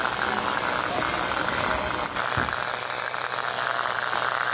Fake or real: real